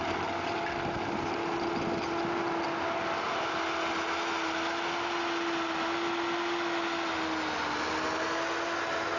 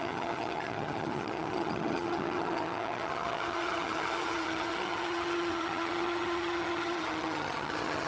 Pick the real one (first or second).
first